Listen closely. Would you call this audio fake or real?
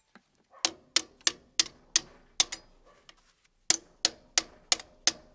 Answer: real